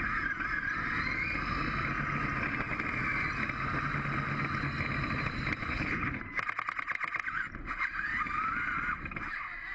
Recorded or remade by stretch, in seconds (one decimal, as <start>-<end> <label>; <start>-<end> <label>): 0.0-5.6 recorded; 5.6-6.2 remade; 6.2-9.7 recorded